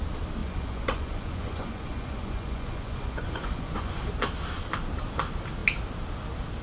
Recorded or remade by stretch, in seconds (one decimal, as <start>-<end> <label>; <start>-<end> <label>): 0.0-0.4 recorded; 0.4-4.1 remade; 4.1-6.6 recorded